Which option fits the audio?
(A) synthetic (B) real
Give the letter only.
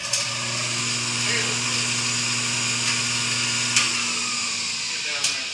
B